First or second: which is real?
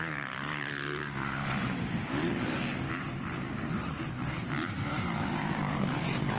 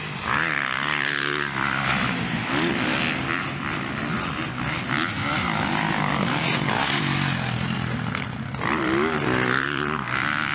second